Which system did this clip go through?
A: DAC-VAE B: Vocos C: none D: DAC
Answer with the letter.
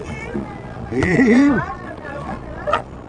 B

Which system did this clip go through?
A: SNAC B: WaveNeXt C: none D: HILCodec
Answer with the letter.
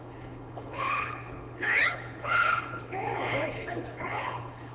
D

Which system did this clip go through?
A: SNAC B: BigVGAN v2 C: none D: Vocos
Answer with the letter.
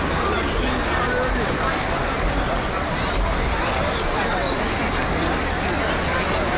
C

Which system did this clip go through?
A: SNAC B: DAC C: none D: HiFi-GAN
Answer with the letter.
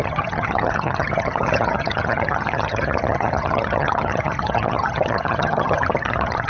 D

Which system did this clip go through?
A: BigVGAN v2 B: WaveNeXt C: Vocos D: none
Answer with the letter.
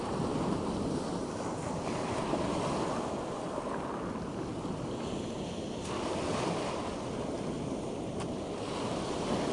D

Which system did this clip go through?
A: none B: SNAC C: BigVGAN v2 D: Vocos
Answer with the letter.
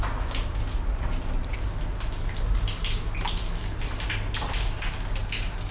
A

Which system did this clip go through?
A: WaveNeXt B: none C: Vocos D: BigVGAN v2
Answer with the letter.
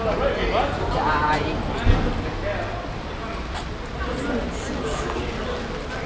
B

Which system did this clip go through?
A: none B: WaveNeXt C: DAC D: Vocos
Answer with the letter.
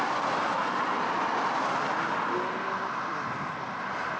A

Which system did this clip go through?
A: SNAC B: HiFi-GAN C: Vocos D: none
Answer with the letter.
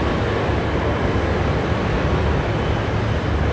D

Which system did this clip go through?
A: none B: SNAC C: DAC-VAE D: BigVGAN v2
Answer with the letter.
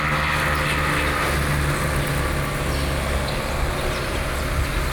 A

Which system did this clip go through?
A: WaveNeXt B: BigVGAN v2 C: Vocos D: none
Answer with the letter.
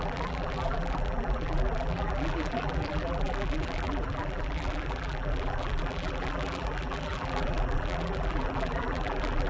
B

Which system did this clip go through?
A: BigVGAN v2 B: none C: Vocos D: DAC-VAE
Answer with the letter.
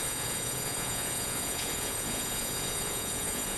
C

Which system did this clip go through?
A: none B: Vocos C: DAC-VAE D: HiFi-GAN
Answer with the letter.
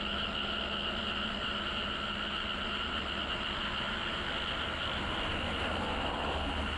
A